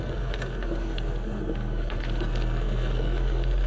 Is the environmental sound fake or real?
fake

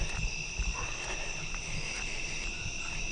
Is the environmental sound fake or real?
real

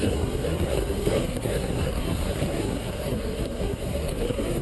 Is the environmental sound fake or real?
fake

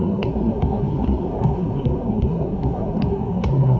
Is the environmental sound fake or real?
fake